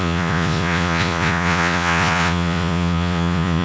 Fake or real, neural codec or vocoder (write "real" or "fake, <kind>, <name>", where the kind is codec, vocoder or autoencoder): fake, vocoder, Vocos